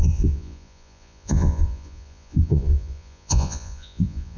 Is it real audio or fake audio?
fake